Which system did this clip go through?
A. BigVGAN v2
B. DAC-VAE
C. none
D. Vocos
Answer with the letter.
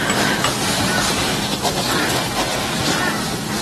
C